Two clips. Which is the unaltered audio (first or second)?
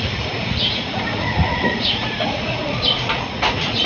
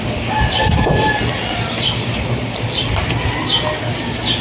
second